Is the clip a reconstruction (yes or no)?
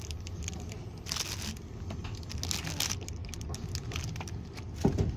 no